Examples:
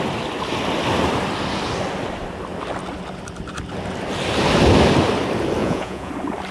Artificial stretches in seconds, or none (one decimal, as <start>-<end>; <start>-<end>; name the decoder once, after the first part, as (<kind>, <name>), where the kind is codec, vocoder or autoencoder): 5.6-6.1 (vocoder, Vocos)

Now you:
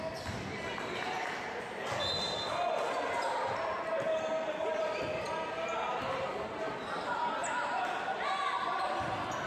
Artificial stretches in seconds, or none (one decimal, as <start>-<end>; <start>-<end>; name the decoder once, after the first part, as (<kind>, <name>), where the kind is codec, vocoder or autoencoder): none

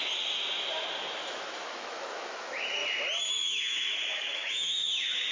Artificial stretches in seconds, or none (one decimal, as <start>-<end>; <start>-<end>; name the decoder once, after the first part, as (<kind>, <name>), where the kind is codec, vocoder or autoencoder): 1.3-2.8 (autoencoder, DAC-VAE); 3.3-5.3

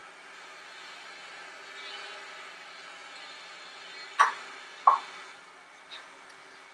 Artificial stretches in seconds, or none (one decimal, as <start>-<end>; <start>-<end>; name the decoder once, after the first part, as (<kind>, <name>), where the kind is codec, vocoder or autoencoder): none